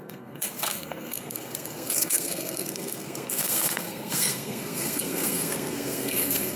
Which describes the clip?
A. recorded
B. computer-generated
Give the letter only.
B